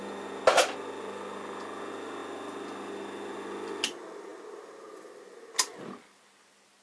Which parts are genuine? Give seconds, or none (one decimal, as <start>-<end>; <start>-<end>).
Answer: 0.0-6.8